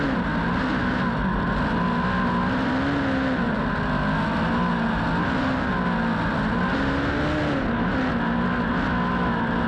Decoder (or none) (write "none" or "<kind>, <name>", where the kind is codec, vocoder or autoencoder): none